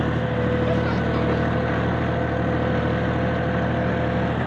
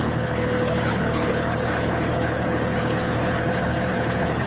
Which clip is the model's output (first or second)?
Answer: second